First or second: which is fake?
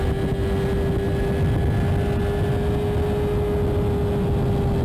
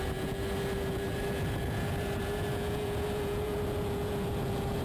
second